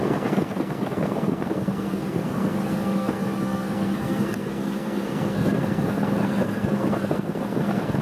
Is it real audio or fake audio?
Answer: fake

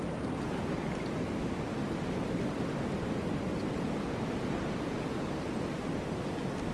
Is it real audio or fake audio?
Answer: real